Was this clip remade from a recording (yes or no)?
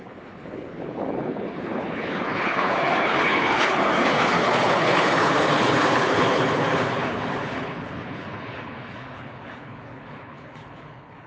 yes